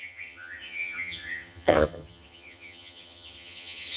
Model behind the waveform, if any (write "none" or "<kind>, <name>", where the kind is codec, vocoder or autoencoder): vocoder, HiFi-GAN